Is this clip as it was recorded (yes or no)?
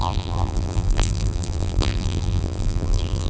no